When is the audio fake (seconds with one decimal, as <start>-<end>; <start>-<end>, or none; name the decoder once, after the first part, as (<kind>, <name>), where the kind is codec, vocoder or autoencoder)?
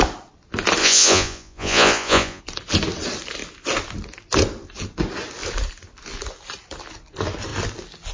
0.8-2.4 (vocoder, Vocos)